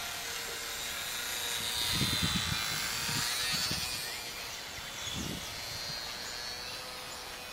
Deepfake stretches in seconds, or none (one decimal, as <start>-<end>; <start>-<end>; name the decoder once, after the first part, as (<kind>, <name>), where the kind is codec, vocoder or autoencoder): none